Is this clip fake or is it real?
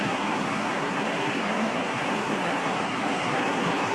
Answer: fake